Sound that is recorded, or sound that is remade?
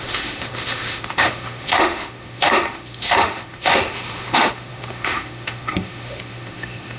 remade